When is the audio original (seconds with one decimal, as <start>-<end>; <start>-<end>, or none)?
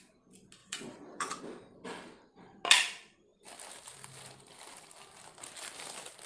0.0-0.6; 1.4-6.3